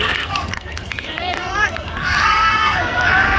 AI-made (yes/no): yes